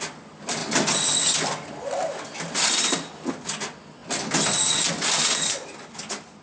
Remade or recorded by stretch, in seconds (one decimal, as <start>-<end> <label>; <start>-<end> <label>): 0.0-6.4 recorded